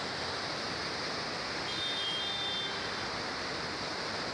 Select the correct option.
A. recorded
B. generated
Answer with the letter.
A